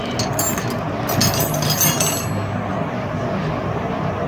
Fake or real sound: real